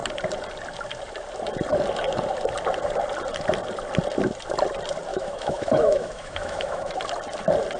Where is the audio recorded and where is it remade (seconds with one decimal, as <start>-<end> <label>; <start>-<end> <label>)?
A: 0.0-5.1 recorded; 5.1-6.9 remade; 6.9-7.8 recorded